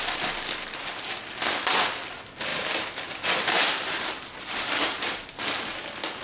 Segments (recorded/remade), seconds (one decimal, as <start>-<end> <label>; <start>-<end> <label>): 0.0-2.5 recorded; 2.5-5.4 remade; 5.4-6.2 recorded